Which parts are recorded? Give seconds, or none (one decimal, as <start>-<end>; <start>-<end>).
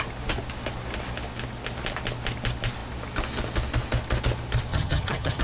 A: 0.0-4.7